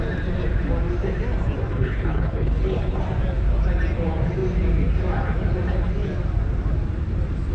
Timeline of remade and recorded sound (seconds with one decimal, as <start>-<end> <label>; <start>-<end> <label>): 0.0-1.6 recorded; 1.6-3.0 remade; 3.0-7.5 recorded